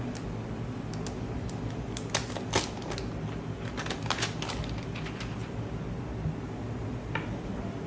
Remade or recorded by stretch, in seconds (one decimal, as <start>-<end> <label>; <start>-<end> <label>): 0.0-7.9 recorded